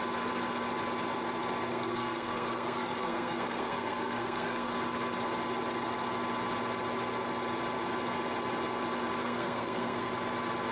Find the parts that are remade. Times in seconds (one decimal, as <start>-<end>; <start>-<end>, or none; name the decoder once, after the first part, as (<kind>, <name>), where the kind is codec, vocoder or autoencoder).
1.7-4.7 (codec, SNAC); 9.2-10.1